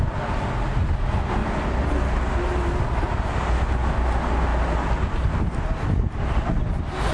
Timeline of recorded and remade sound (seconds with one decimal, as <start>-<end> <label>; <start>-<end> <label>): 0.0-1.4 recorded; 1.4-2.0 remade; 2.0-7.1 recorded